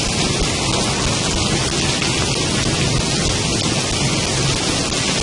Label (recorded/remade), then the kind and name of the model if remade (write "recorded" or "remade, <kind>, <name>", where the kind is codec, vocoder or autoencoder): recorded